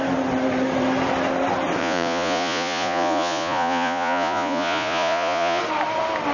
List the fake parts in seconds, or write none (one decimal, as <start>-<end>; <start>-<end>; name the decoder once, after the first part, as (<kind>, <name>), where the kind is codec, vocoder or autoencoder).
1.8-5.6 (vocoder, Vocos)